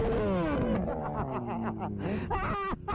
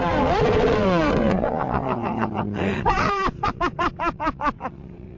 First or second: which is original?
first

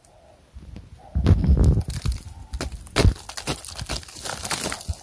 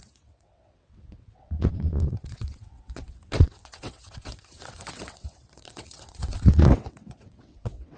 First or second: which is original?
first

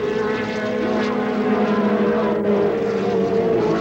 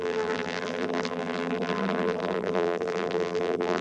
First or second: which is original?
first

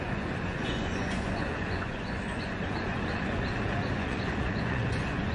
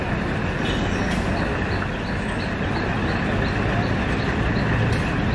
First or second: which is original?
second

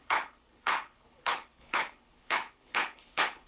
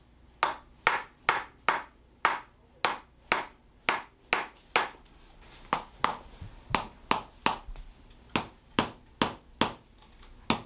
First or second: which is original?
second